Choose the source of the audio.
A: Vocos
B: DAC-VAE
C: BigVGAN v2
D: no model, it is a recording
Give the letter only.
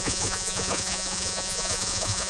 A